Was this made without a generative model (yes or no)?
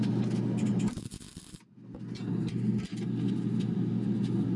yes